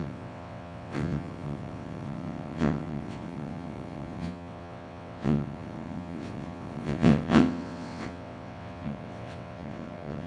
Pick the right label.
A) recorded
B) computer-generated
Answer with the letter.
B